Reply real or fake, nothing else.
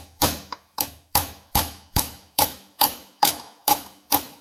fake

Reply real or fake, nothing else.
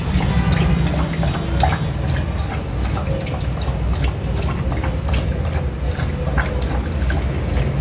real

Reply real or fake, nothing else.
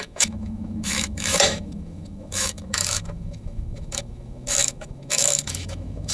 fake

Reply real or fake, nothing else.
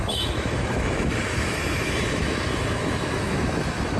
fake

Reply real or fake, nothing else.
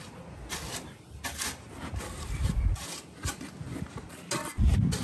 real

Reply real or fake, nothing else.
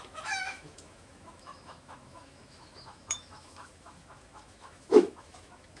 fake